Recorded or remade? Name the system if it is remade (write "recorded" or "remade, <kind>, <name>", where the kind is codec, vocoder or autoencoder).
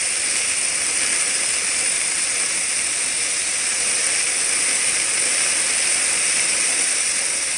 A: recorded